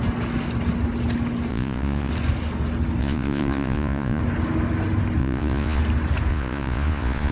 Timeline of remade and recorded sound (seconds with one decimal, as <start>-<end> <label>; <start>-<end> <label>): 0.0-1.5 recorded; 1.5-2.1 remade; 2.1-3.0 recorded; 3.0-4.2 remade; 4.2-5.2 recorded; 5.2-5.8 remade; 5.8-6.3 recorded; 6.3-7.3 remade

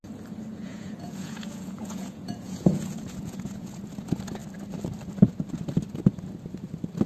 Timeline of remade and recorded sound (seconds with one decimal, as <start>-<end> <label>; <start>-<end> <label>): 0.0-0.5 recorded; 0.5-3.8 remade; 3.8-7.1 recorded